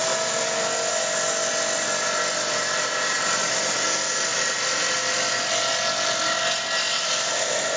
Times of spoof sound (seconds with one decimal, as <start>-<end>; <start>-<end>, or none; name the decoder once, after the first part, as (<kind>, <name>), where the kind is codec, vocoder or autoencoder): none